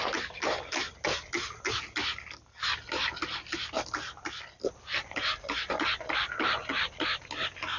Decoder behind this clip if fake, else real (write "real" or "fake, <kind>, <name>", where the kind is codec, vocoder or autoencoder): real